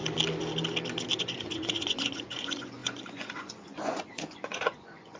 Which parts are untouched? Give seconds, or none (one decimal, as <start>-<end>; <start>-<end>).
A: 0.0-1.2